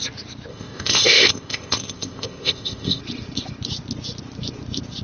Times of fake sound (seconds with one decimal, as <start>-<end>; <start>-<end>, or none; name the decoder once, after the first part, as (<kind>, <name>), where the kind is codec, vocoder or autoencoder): 0.5-3.0 (codec, ZipCodec)